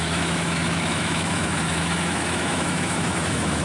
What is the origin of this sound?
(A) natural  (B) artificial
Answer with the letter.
B